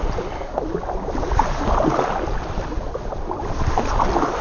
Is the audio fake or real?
real